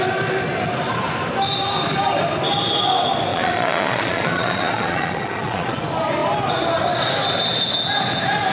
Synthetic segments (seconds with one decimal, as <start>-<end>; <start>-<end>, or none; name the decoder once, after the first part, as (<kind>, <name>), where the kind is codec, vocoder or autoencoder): 3.3-5.8 (vocoder, Vocos)